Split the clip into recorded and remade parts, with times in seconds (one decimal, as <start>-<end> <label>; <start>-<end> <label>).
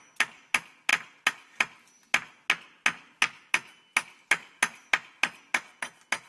0.0-6.3 recorded